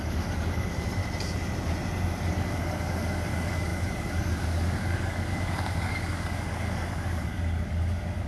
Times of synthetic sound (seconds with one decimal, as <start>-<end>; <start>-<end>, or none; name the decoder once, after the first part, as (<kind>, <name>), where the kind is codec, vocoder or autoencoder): 0.0-1.0 (codec, DAC); 2.3-8.3